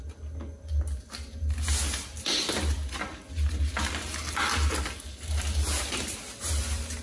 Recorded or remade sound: recorded